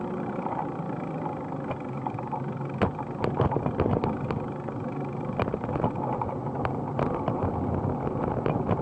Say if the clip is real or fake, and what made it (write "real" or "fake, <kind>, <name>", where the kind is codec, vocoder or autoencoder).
real